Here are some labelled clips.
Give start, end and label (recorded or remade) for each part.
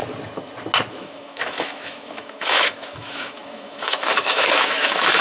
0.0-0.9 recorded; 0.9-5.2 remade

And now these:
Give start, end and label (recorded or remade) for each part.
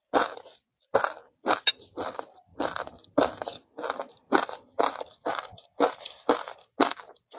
0.0-7.4 recorded